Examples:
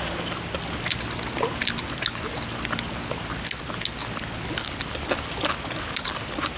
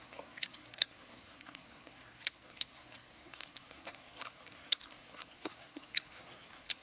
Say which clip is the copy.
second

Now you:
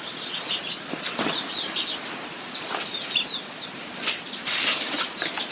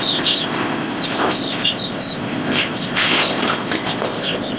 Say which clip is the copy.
second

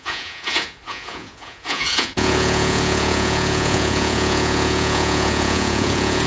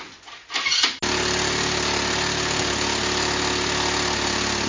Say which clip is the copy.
first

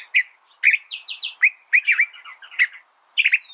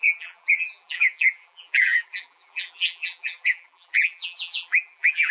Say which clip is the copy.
second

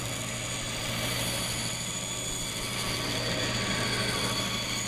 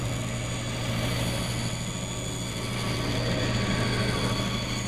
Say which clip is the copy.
first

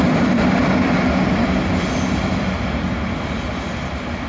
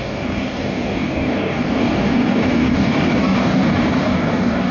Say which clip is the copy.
second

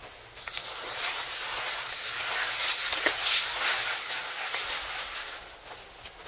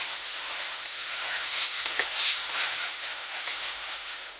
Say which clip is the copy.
second